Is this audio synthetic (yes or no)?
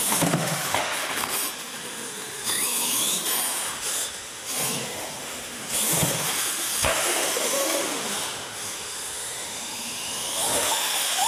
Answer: yes